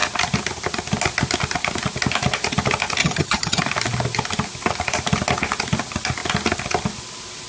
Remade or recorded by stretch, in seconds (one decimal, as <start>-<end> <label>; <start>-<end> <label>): 0.0-3.0 recorded; 3.0-3.6 remade; 3.6-7.5 recorded